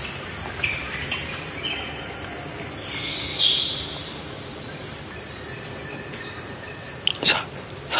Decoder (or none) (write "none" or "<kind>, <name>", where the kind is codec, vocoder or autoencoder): none